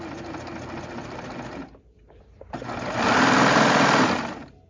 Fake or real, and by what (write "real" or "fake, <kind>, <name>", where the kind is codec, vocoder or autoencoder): real